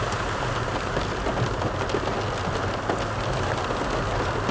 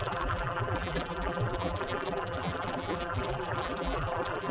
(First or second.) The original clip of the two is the first